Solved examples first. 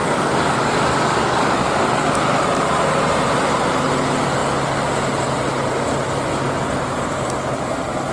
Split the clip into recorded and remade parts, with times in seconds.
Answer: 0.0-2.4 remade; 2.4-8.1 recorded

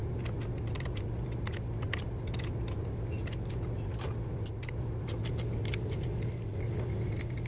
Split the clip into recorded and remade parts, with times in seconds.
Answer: 0.0-7.5 recorded

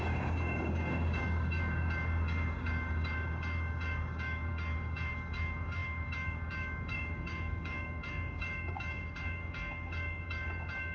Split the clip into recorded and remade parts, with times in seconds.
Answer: 0.0-10.9 remade

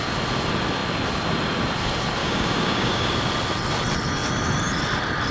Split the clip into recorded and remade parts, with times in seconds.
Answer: 0.0-2.2 recorded; 2.2-3.1 remade; 3.1-5.3 recorded

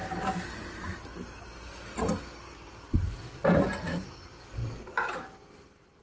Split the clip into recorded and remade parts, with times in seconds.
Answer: 0.0-6.0 recorded

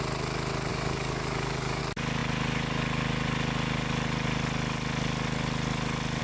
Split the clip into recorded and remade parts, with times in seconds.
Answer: 0.0-0.7 recorded; 0.7-1.8 remade; 1.8-6.2 recorded

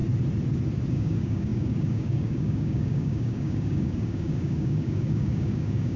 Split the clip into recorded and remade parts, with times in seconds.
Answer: 0.0-0.9 recorded; 0.9-6.0 remade